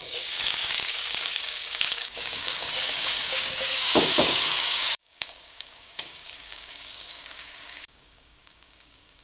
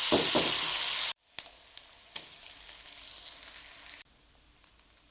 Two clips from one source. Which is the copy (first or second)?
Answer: first